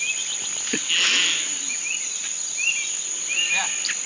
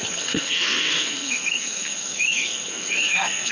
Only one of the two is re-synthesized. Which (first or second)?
second